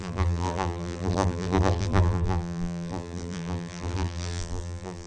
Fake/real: fake